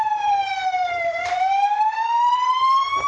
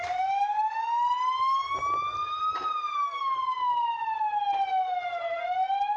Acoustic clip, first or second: second